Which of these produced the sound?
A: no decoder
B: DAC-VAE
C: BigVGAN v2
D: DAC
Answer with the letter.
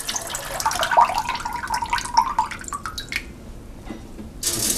A